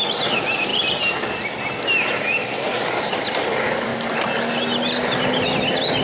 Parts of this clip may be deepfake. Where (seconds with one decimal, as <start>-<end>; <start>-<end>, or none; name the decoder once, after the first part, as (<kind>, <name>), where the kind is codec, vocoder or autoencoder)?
0.0-0.7 (vocoder, BigVGAN v2); 3.0-3.9; 5.6-6.0